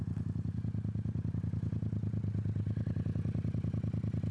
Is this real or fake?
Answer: real